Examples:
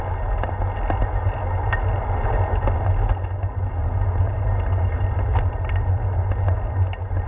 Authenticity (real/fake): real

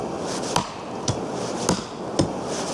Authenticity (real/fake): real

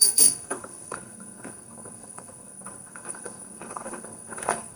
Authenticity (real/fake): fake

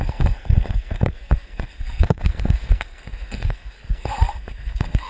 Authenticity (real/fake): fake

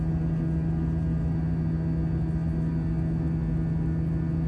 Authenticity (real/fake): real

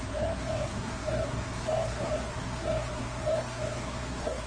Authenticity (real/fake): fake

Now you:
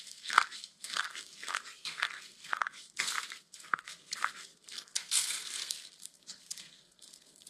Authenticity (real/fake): fake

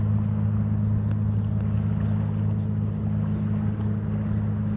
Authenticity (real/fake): real